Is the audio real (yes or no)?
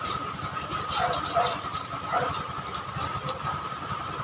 yes